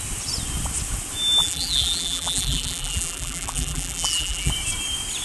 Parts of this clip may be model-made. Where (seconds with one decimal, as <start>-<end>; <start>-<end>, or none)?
1.4-4.5

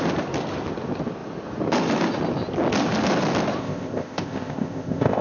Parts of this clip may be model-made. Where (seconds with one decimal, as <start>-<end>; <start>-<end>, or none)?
3.6-5.2

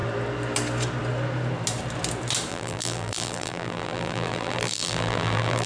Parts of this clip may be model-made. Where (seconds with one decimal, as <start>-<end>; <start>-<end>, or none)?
2.5-5.7